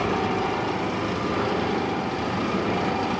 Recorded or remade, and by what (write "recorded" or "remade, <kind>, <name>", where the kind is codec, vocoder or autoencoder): recorded